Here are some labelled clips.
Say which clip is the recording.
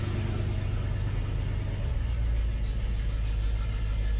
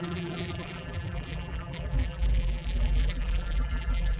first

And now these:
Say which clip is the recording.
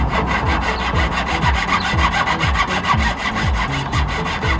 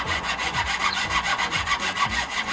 first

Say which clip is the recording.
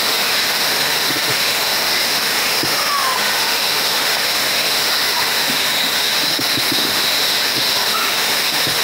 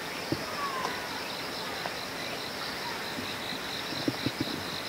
second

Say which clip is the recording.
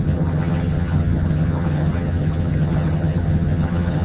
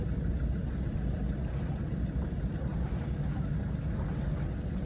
second